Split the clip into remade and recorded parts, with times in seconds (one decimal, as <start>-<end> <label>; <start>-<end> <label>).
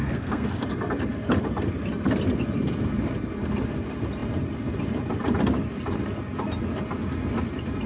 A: 0.0-0.6 remade; 0.6-7.9 recorded